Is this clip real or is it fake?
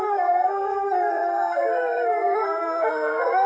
fake